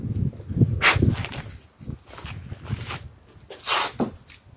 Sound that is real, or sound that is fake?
real